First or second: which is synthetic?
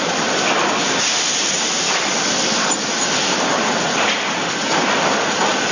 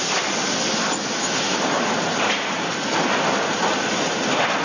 first